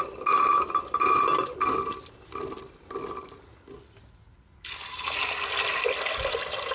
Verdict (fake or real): real